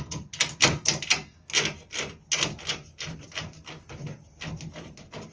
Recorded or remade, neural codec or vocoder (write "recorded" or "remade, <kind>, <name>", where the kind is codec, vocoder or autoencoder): recorded